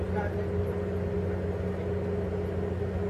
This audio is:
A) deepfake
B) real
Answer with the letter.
B